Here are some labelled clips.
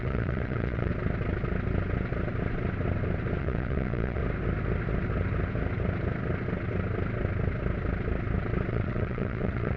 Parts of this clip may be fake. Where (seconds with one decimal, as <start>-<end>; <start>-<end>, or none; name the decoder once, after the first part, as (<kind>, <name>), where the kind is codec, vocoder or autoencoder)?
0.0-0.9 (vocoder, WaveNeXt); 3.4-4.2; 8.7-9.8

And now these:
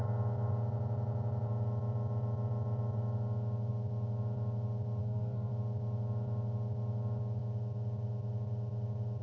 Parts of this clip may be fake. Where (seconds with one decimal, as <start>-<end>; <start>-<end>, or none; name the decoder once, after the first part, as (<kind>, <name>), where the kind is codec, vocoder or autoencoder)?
5.0-5.5 (codec, SNAC)

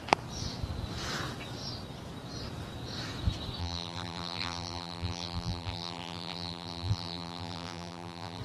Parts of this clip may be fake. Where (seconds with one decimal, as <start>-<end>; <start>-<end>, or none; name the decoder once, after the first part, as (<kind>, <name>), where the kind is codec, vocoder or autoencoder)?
3.6-8.4 (vocoder, BigVGAN v2)

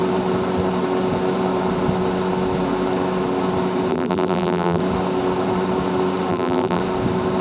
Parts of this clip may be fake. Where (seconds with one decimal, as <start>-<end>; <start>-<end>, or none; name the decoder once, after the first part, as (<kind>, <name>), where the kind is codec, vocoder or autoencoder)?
3.9-4.8 (vocoder, BigVGAN v2); 6.3-6.8

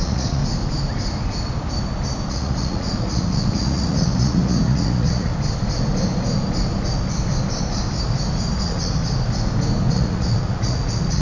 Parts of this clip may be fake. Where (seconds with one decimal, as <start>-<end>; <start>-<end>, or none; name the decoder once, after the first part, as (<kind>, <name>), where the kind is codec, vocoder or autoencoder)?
0.0-0.4 (vocoder, Vocos); 2.3-5.3; 8.6-9.0; 9.9-11.2

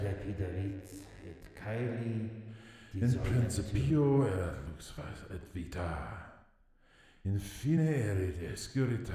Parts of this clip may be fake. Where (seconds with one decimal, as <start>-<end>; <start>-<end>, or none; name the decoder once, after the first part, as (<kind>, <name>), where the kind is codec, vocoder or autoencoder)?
0.7-1.6 (vocoder, BigVGAN v2)

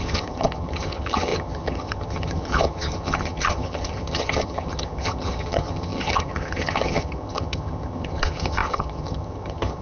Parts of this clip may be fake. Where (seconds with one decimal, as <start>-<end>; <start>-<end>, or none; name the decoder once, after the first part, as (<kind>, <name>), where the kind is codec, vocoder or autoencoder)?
0.0-9.8 (vocoder, HiFi-GAN)